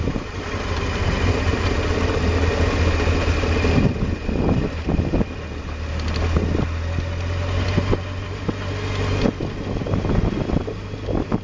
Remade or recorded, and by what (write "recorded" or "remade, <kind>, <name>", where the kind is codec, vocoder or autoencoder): recorded